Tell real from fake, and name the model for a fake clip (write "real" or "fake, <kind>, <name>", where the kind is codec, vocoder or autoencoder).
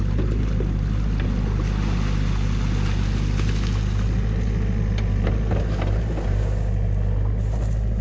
real